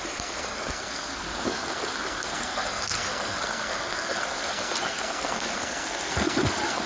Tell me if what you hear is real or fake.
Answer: fake